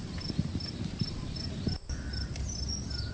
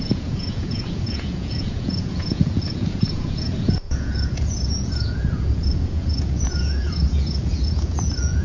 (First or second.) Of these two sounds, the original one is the first